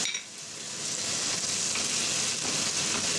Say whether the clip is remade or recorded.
recorded